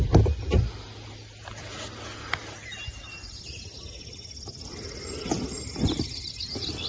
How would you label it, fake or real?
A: real